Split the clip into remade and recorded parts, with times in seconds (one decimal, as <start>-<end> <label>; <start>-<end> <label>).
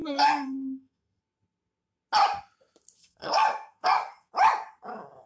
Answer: 0.0-1.2 remade; 1.2-3.0 recorded; 3.0-4.3 remade; 4.3-5.3 recorded